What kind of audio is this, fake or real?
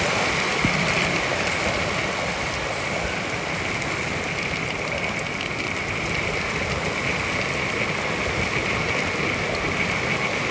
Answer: real